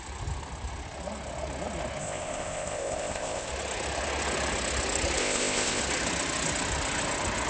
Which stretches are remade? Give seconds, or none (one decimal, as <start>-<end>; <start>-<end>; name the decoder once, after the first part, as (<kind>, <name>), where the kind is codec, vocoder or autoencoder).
2.0-3.5 (codec, ZipCodec); 5.2-5.8